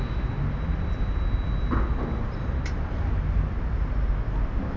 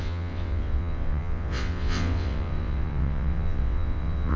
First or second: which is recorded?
first